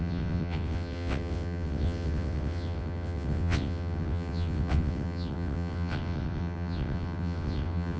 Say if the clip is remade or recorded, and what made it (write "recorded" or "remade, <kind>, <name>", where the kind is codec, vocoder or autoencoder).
remade, vocoder, WaveNeXt